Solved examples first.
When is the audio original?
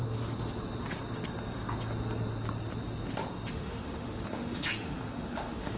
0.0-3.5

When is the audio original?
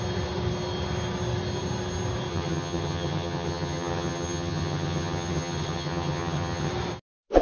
0.0-2.3; 6.7-7.4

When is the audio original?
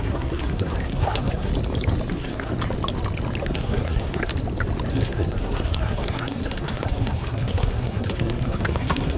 1.5-2.1; 2.5-3.4; 4.3-4.9